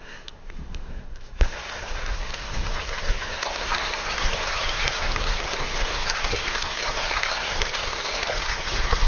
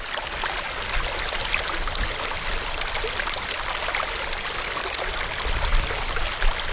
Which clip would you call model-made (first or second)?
first